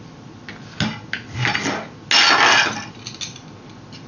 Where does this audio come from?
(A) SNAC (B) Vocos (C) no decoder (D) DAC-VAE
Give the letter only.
C